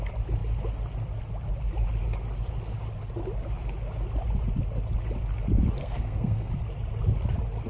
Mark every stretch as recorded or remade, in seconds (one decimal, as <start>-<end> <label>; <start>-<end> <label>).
0.0-5.8 recorded; 5.8-6.5 remade; 6.5-7.7 recorded